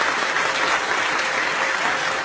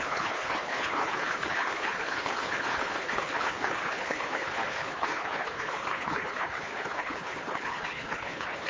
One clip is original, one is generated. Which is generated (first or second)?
second